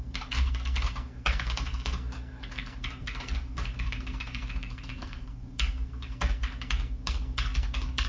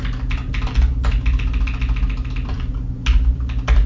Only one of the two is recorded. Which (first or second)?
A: second